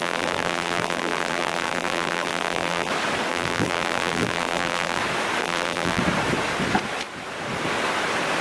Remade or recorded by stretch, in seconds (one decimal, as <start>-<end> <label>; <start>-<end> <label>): 0.0-2.9 remade; 2.9-3.3 recorded; 3.3-5.0 remade; 5.0-5.4 recorded; 5.4-6.0 remade; 6.0-8.4 recorded